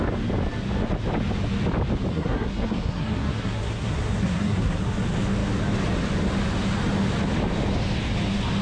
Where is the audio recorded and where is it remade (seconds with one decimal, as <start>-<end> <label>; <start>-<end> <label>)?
0.0-2.1 recorded; 2.1-4.8 remade; 4.8-8.6 recorded